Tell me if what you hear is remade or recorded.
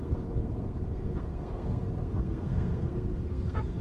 remade